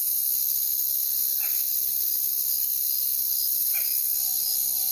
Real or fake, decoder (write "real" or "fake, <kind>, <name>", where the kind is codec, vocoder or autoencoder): real